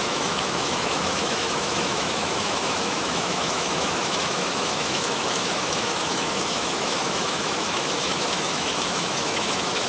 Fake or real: fake